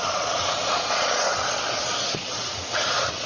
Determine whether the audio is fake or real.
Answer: fake